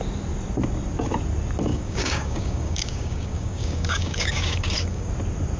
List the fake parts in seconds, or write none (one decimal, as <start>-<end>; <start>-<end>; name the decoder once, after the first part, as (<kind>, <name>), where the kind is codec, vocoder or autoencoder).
1.7-5.1 (codec, DAC)